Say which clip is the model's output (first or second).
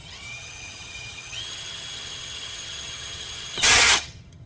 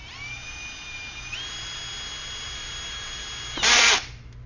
first